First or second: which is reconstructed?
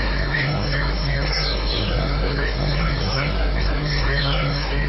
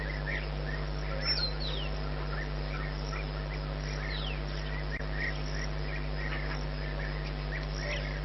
first